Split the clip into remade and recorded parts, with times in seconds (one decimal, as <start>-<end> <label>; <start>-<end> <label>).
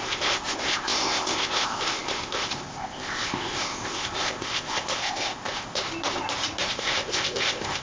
0.0-5.8 remade; 5.8-6.7 recorded; 6.7-7.8 remade